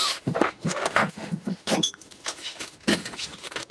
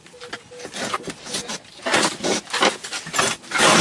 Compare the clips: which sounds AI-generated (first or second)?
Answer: first